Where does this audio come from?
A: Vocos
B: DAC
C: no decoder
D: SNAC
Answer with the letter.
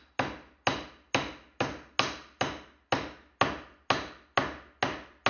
C